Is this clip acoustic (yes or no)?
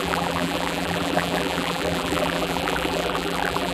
no